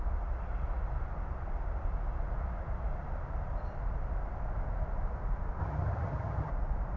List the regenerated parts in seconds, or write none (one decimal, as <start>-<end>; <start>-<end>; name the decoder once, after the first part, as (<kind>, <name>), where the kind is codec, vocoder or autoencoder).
5.6-6.5 (vocoder, HiFi-GAN)